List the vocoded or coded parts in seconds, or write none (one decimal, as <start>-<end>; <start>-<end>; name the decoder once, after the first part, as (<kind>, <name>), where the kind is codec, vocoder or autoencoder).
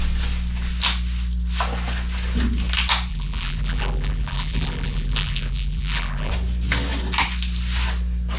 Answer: 3.1-6.3 (vocoder, BigVGAN v2)